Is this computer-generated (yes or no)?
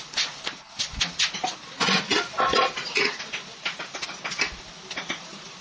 no